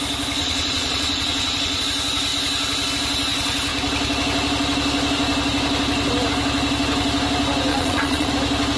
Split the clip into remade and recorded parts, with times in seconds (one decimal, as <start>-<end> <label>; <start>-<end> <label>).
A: 0.0-0.4 recorded; 0.4-1.8 remade; 1.8-7.7 recorded; 7.7-8.3 remade; 8.3-8.8 recorded